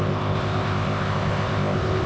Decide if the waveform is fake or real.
fake